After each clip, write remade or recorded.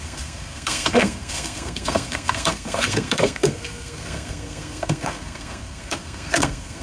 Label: remade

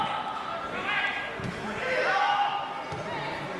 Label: recorded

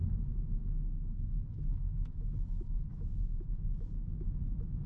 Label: remade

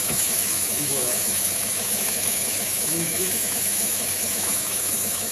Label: remade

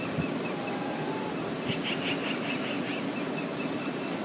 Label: recorded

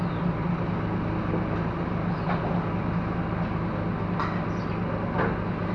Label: recorded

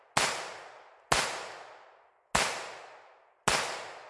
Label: recorded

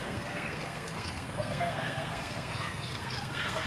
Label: remade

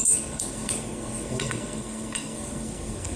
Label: remade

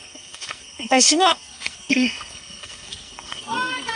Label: remade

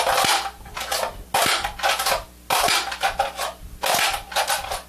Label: recorded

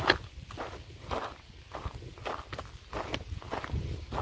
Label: recorded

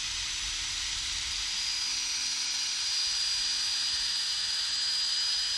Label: recorded